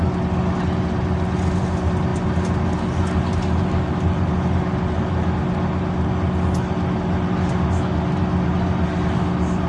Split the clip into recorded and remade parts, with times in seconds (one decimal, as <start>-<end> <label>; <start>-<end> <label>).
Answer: 0.0-9.7 recorded